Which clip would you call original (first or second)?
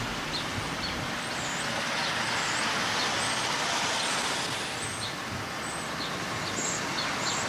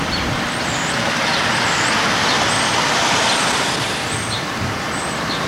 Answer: first